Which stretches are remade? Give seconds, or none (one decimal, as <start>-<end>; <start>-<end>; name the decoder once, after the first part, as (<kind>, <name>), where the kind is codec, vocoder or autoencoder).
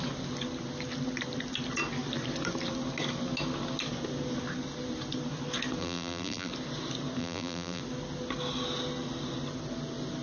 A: 5.8-6.5 (vocoder, BigVGAN v2); 7.2-7.8